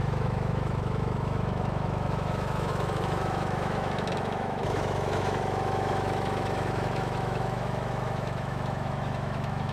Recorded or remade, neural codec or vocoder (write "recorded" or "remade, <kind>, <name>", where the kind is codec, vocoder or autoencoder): remade, autoencoder, DAC-VAE